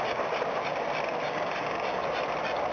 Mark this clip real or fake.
real